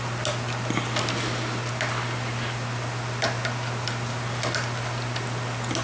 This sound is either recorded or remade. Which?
recorded